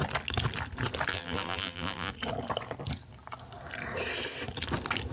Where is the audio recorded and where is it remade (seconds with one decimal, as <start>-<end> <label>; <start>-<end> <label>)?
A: 0.0-1.1 recorded; 1.1-2.1 remade; 2.1-5.1 recorded